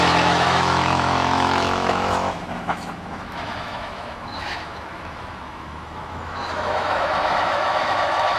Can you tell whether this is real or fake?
fake